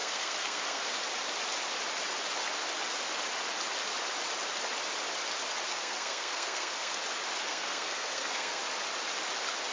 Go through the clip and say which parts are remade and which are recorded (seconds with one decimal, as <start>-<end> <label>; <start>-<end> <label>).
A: 0.0-0.8 remade; 0.8-5.7 recorded; 5.7-7.0 remade; 7.0-7.5 recorded; 7.5-8.6 remade; 8.6-9.7 recorded

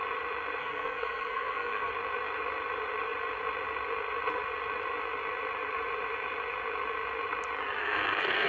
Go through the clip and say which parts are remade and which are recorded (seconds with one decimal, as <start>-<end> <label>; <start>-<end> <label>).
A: 0.0-0.6 recorded; 0.6-1.9 remade; 1.9-7.8 recorded; 7.8-8.5 remade

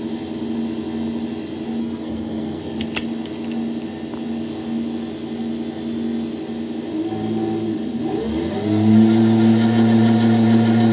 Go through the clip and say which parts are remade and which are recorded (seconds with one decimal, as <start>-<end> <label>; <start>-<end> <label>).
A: 0.0-1.8 recorded; 1.8-2.6 remade; 2.6-10.9 recorded

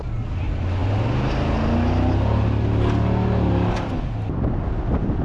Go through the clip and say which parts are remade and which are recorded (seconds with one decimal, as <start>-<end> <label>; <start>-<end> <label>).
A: 0.0-5.2 recorded

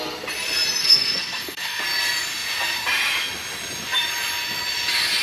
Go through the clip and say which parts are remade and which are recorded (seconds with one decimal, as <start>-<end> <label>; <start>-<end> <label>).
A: 0.0-0.8 recorded; 0.8-1.8 remade; 1.8-5.2 recorded

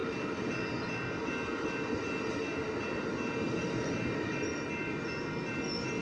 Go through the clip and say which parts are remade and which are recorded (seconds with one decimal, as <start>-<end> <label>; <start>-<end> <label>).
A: 0.0-6.0 recorded

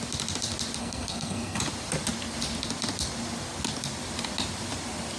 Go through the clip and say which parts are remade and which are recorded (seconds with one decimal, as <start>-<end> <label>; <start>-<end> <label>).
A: 0.0-0.8 recorded; 0.8-1.6 remade; 1.6-5.2 recorded

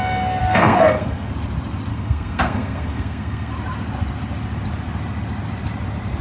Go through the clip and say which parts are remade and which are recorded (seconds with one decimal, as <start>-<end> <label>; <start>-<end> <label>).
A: 0.0-0.4 recorded; 0.4-1.3 remade; 1.3-1.9 recorded; 1.9-3.5 remade; 3.5-6.2 recorded